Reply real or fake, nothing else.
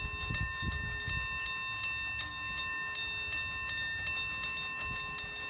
real